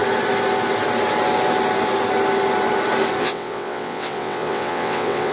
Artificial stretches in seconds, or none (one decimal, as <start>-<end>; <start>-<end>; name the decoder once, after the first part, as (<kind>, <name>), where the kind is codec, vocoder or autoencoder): 3.2-5.3 (vocoder, WaveNeXt)